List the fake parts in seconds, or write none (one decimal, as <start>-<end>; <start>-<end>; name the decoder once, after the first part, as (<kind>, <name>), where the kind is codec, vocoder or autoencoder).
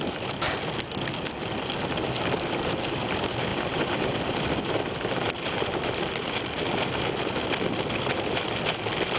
none